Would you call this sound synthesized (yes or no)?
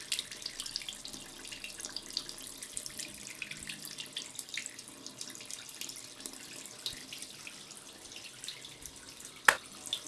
no